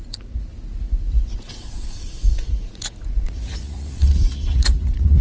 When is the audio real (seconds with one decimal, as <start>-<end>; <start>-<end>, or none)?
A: none